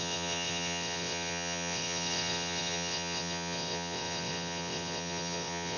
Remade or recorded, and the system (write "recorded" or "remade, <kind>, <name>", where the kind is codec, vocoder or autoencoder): remade, vocoder, WaveNeXt